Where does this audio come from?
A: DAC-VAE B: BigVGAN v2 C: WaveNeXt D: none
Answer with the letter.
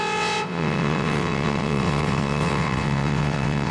C